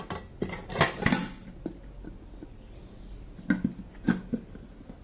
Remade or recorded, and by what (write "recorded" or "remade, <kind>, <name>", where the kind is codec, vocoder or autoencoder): recorded